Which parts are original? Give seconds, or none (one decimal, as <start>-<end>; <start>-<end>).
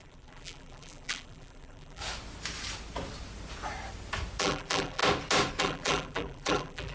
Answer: 2.0-4.4; 5.0-5.6